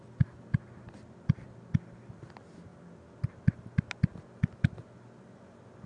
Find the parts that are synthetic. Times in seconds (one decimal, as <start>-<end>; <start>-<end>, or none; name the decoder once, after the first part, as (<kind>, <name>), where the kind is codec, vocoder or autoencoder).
none